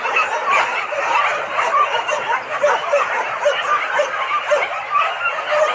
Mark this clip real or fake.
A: fake